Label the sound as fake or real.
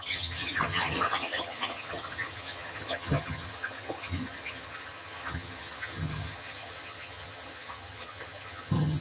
fake